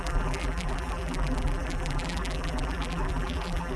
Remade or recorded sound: remade